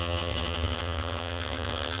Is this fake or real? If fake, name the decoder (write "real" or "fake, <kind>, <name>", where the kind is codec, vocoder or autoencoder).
fake, vocoder, HiFi-GAN